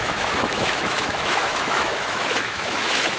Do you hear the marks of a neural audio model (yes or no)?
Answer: yes